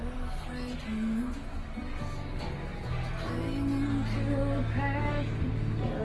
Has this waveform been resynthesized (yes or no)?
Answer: no